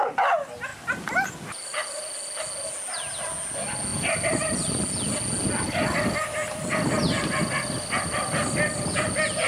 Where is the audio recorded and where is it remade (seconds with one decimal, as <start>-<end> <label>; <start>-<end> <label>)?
0.0-9.5 recorded